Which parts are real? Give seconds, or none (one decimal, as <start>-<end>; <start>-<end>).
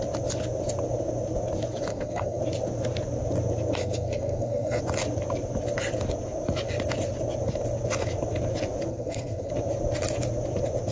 0.0-1.9; 2.4-3.8; 4.8-8.9; 9.5-10.9